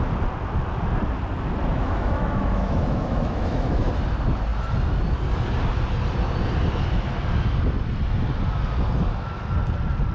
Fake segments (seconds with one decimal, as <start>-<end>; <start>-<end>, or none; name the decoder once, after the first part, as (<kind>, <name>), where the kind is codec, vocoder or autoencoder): 1.7-3.9 (autoencoder, DAC-VAE)